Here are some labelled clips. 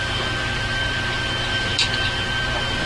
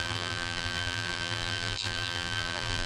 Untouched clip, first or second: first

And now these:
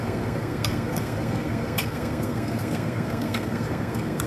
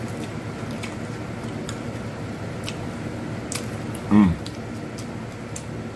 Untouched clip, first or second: second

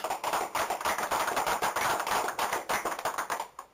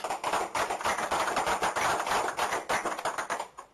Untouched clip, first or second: second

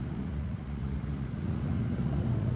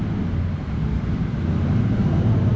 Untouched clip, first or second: second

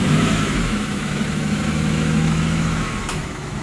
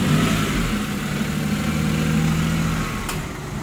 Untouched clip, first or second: second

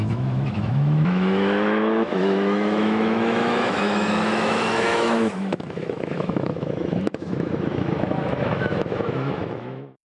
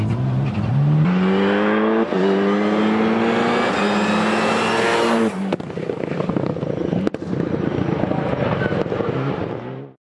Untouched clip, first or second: second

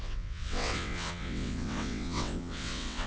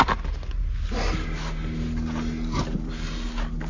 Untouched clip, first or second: second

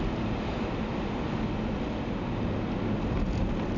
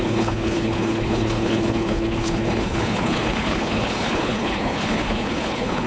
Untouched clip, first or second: first